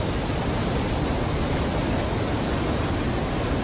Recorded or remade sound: recorded